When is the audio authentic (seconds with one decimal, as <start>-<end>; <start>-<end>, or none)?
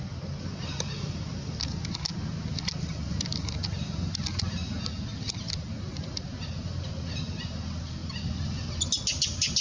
0.0-9.6